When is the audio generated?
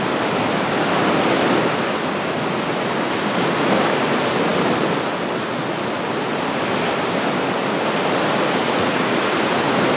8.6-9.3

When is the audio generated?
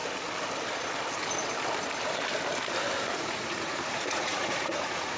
3.1-5.2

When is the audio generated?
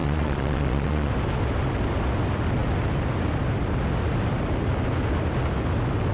0.0-1.1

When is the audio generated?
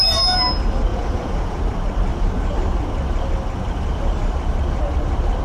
0.9-1.6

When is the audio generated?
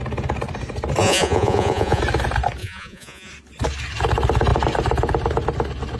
1.0-2.0; 2.6-3.3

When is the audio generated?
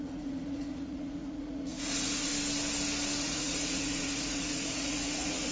0.0-2.3; 3.2-5.5